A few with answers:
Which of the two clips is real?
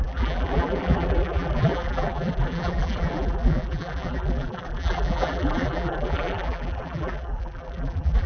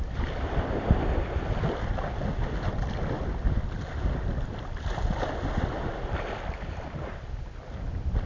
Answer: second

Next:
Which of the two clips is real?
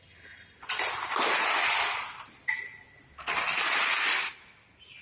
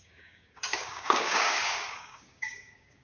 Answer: first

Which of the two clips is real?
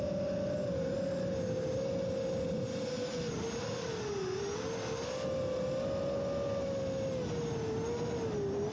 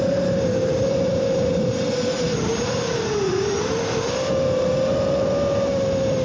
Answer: first